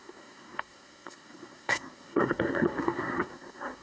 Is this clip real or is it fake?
fake